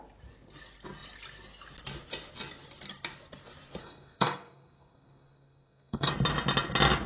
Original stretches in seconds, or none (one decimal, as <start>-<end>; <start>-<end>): 0.0-3.8; 6.1-7.1